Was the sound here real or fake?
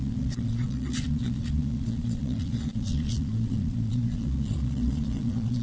fake